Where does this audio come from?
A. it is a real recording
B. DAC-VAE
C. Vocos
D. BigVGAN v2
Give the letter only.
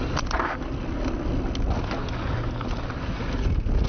A